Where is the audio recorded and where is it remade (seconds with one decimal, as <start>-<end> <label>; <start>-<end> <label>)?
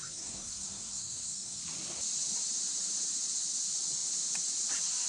0.0-1.6 remade; 1.6-5.1 recorded